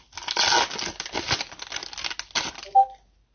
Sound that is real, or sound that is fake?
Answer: real